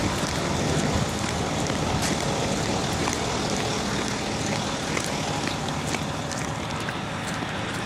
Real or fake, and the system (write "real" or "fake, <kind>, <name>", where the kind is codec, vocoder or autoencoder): real